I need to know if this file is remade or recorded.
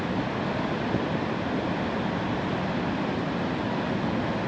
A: recorded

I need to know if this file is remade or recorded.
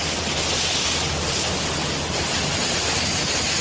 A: recorded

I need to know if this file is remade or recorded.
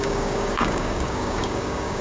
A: remade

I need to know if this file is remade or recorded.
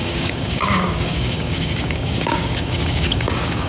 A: remade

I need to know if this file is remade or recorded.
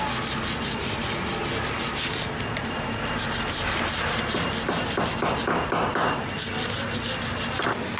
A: recorded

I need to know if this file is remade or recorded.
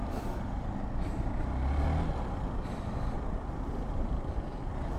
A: recorded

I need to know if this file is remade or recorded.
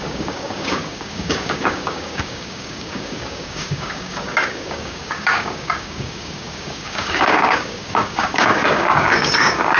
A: remade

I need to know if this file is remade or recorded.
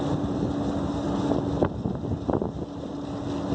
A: recorded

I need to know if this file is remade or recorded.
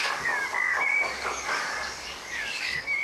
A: remade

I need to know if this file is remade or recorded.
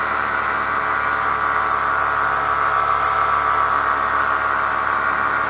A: recorded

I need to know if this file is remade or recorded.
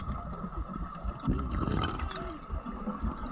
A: recorded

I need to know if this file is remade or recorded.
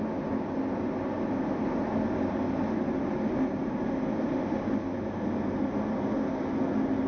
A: recorded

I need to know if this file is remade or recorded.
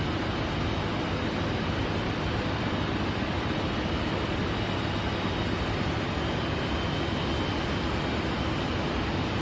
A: recorded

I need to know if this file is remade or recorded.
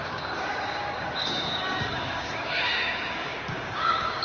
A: remade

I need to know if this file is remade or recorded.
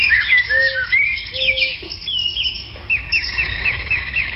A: remade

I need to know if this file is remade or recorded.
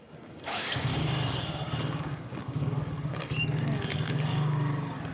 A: remade